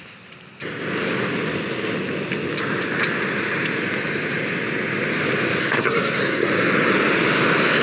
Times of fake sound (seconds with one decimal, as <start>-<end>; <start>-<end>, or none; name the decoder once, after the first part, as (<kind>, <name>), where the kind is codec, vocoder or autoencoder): 5.6-6.5 (codec, SNAC)